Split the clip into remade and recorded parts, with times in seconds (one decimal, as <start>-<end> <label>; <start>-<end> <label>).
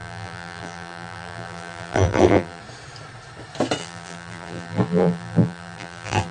0.0-2.6 remade; 2.6-3.8 recorded; 3.8-6.3 remade